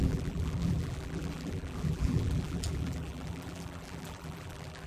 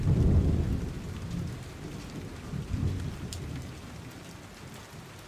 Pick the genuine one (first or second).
second